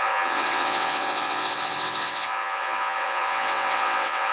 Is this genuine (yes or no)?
no